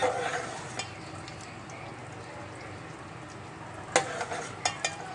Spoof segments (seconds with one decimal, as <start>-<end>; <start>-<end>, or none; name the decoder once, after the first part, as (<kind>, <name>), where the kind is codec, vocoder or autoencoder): none